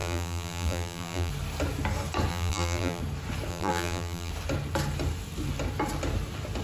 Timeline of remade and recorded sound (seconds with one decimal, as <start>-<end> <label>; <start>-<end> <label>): 0.0-1.3 remade; 1.3-2.3 recorded; 2.3-3.0 remade; 3.0-3.5 recorded; 3.5-4.3 remade; 4.3-6.6 recorded

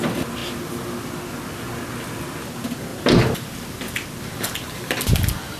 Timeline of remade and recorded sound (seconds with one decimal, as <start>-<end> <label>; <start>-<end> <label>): 0.0-5.6 recorded

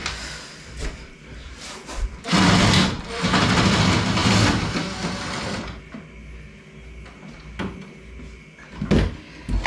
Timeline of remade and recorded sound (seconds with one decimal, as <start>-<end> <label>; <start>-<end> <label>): 0.0-3.4 remade; 3.4-4.2 recorded; 4.2-5.8 remade; 5.8-9.7 recorded

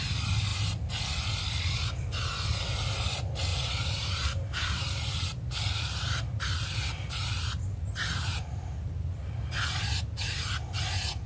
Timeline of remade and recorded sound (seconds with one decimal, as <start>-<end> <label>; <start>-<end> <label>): 0.0-3.5 recorded; 3.5-5.0 remade; 5.0-7.2 recorded; 7.2-9.4 remade; 9.4-11.3 recorded

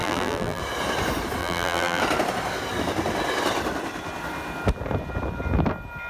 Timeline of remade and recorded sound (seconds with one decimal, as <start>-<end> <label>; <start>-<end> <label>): 0.0-0.6 remade; 0.6-1.4 recorded; 1.4-2.0 remade; 2.0-6.1 recorded

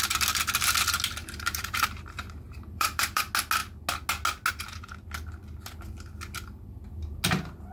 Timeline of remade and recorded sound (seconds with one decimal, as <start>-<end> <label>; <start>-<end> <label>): 0.0-1.2 recorded; 1.2-3.2 remade; 3.2-7.7 recorded

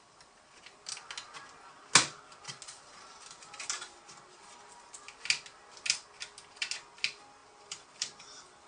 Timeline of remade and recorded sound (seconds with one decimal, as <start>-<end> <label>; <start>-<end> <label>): 0.0-7.4 recorded; 7.4-8.7 remade

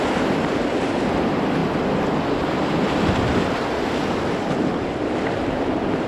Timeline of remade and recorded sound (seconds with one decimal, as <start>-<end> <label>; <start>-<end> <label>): 0.0-6.1 recorded